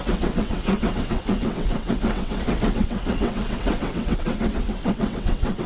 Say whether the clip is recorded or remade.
remade